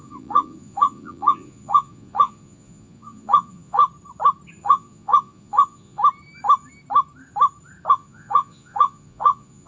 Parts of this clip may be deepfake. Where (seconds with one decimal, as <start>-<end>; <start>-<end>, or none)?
0.0-3.8; 4.6-6.0; 7.9-9.7